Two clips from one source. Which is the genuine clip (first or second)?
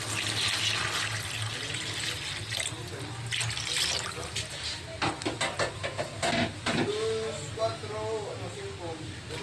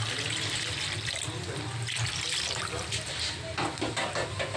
first